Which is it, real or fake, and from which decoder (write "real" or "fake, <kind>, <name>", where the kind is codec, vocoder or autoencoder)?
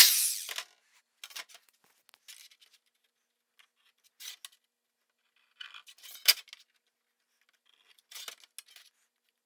real